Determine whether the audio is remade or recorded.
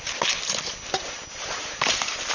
recorded